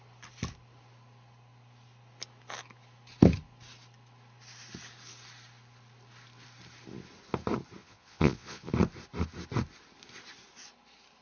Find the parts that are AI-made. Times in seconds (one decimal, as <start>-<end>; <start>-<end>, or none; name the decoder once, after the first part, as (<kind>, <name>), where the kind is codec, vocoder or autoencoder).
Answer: 7.8-8.7 (vocoder, Vocos)